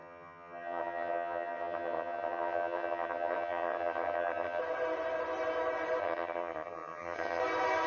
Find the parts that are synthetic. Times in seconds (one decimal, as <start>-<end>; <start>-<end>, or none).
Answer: 0.0-4.6; 6.0-7.4